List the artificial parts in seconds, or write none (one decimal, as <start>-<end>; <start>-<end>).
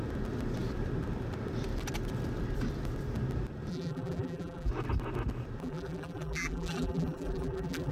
3.7-4.7; 5.6-7.9